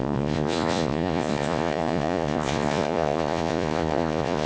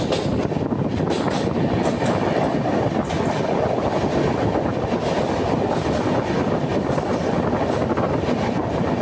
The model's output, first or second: first